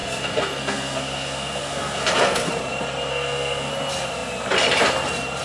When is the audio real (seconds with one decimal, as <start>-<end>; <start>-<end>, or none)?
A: 2.5-3.1; 3.7-5.4